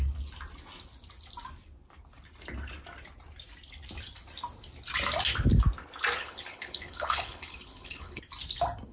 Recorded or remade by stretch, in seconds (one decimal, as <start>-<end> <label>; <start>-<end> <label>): 0.0-6.2 recorded; 6.2-8.2 remade; 8.2-8.9 recorded